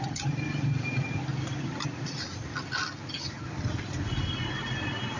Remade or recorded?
recorded